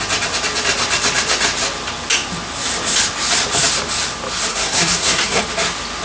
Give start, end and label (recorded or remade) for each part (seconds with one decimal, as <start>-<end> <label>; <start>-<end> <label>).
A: 0.0-4.5 recorded; 4.5-5.4 remade; 5.4-6.0 recorded